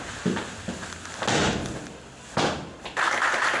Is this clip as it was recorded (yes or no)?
yes